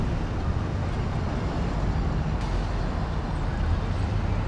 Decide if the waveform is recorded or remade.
recorded